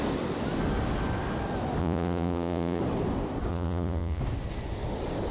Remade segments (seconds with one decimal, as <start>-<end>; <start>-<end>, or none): 1.8-2.8; 3.5-4.2